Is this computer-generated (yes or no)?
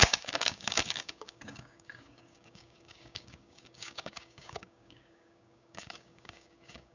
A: yes